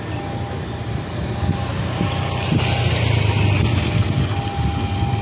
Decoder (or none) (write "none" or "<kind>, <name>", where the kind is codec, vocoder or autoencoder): none